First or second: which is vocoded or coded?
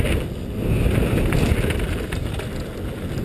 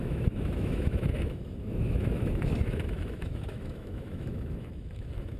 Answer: second